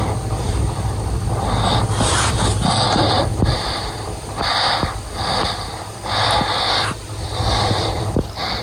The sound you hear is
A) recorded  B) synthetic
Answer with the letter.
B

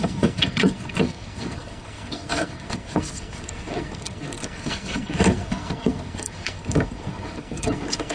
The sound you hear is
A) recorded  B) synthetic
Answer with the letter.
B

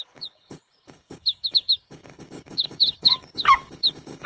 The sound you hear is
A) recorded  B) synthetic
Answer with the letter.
B